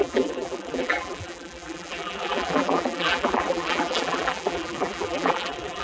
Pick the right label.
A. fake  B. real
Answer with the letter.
A